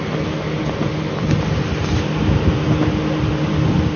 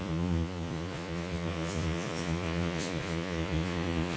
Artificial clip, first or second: second